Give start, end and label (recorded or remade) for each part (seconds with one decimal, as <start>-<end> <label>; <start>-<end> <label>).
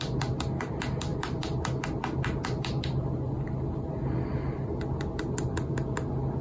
0.0-6.4 recorded